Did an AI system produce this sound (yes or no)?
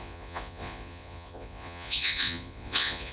yes